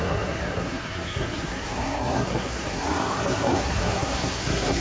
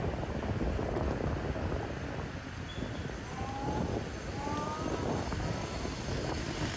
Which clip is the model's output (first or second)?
first